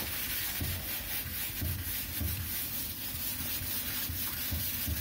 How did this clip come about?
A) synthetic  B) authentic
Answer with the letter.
B